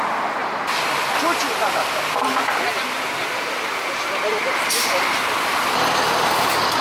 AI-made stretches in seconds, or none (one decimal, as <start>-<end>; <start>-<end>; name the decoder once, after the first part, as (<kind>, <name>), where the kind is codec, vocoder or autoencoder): 0.4-2.0 (vocoder, BigVGAN v2); 4.3-6.2